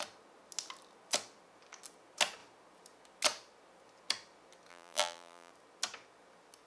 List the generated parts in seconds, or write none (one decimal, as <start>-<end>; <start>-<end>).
4.7-5.5